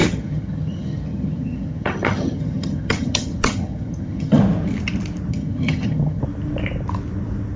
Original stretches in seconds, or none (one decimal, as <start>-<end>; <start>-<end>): 4.4-5.3; 6.2-7.6